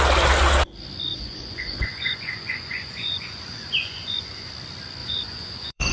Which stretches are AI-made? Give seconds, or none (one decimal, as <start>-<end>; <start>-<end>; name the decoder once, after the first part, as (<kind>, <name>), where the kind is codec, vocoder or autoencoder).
1.1-4.5 (vocoder, Vocos); 5.0-5.9